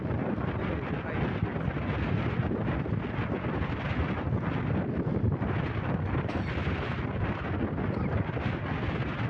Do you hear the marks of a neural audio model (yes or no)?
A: no